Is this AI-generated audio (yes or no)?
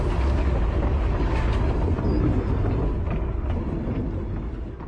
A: no